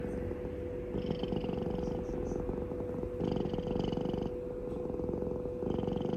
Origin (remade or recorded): recorded